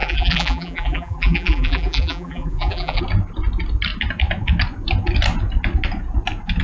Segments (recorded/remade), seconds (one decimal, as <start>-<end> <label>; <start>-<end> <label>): 0.0-3.0 remade; 3.0-6.6 recorded